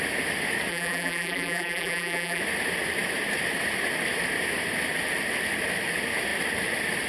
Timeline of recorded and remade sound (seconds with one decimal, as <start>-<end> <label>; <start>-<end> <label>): 0.0-0.7 recorded; 0.7-2.4 remade; 2.4-7.1 recorded